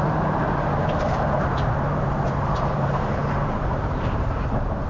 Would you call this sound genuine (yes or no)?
no